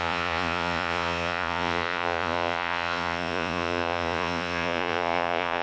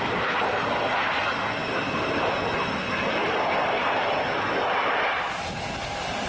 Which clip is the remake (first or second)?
first